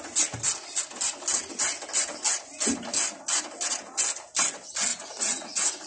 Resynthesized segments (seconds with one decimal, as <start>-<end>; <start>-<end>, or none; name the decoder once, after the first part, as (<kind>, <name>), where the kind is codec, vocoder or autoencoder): 4.9-5.9 (vocoder, Vocos)